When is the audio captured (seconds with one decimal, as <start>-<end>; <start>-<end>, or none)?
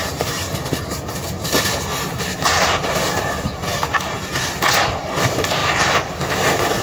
0.8-1.9; 2.8-6.8